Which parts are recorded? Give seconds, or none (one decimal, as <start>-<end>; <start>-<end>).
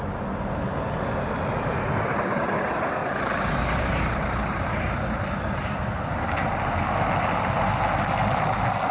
0.0-3.0; 5.8-8.9